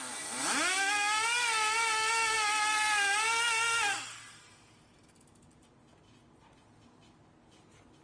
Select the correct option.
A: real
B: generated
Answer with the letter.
A